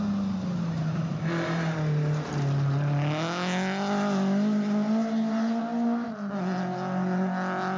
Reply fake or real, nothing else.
real